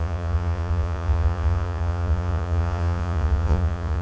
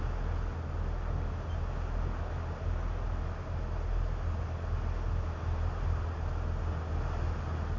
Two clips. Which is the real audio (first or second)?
second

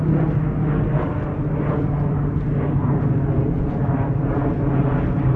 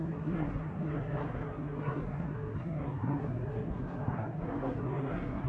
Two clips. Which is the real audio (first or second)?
first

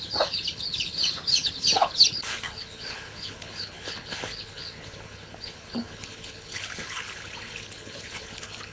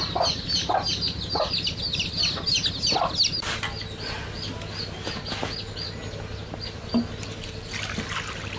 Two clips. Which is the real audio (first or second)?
second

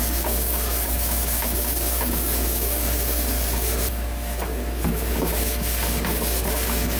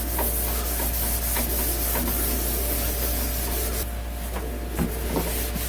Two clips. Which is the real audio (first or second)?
second